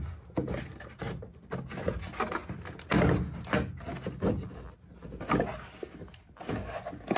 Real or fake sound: real